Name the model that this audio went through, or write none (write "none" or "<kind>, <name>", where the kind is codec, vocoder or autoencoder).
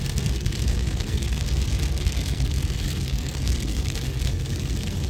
codec, SNAC